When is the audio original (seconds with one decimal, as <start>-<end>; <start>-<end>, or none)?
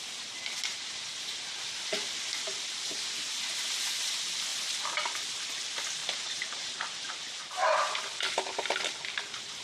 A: 0.0-6.0; 8.0-9.6